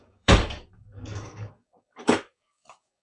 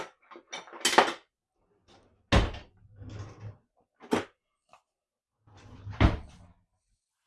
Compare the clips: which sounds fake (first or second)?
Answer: first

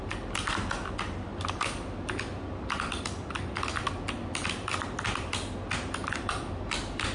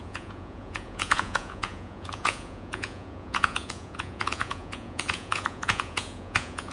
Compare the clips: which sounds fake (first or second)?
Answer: second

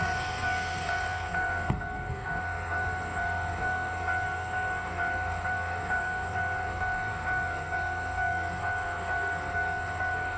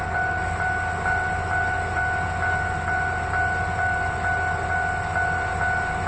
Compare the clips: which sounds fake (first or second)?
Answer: first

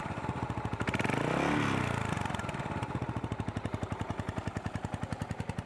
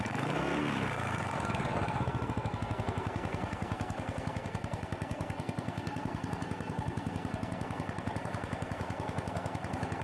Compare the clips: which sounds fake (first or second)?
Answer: second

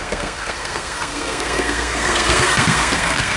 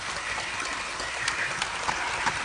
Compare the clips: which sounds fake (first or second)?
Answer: first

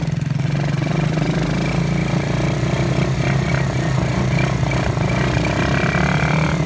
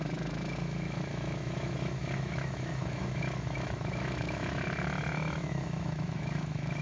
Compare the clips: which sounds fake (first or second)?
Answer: second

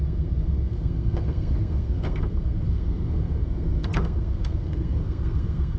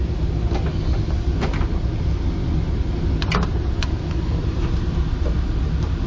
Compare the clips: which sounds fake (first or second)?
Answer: first